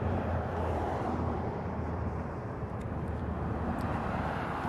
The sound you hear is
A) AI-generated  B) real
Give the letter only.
A